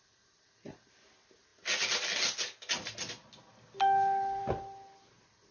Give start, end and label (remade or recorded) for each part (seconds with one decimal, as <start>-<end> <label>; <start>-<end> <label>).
0.0-5.5 recorded